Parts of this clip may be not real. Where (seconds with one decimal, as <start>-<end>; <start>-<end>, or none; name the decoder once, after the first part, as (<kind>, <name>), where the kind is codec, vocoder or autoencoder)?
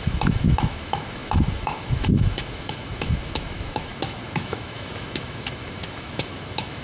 0.0-6.8 (autoencoder, DAC-VAE)